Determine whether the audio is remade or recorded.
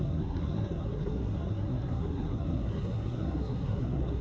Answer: remade